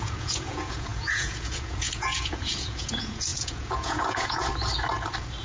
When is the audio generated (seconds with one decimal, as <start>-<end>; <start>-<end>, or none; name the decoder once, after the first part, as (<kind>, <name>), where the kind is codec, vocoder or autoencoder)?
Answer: 0.0-4.5 (vocoder, Vocos)